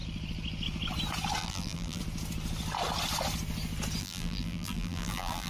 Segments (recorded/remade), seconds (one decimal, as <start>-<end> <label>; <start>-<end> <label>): 0.0-1.4 recorded; 1.4-2.0 remade; 2.0-4.0 recorded; 4.0-5.5 remade